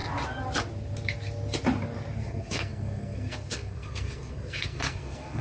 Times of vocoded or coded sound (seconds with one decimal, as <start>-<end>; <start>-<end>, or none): 2.2-5.4

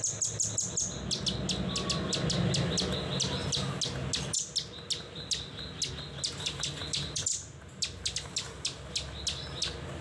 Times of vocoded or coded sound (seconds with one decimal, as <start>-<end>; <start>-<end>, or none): none

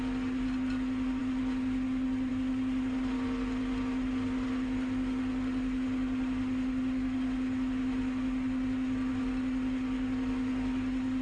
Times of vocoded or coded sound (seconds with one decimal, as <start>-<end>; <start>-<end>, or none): none

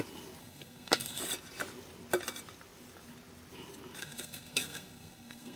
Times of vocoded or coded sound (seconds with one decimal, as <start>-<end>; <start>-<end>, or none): 0.4-1.2; 4.0-5.6

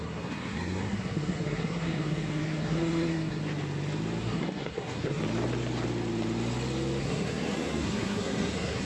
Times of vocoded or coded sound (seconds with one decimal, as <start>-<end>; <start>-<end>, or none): 0.0-3.4; 4.2-5.2; 7.0-8.8

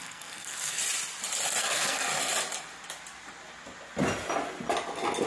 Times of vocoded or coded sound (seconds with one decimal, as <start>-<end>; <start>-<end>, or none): 0.0-0.8; 1.6-2.1

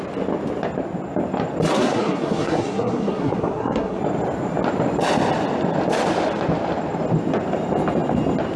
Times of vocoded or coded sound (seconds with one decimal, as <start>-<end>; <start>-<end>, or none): 1.7-4.0